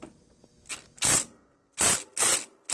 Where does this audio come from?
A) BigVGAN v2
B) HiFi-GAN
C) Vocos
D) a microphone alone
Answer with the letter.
D